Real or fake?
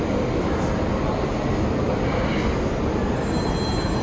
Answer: real